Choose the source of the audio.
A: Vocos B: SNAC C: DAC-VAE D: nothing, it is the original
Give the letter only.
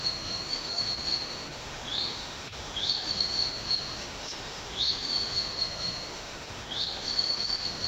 C